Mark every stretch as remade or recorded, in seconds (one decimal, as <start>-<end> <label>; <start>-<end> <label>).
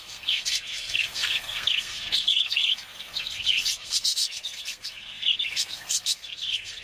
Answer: 0.0-6.8 remade